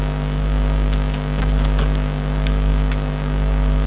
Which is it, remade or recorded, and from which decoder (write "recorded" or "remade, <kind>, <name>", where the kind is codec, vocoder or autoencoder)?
remade, codec, DAC